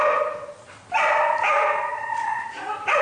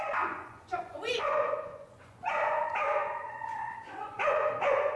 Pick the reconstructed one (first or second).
second